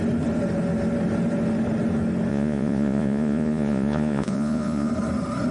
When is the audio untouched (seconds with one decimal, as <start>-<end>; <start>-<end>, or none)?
0.0-2.3; 4.9-5.5